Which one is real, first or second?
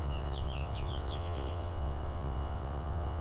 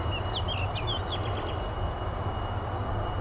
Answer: second